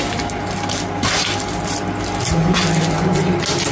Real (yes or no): yes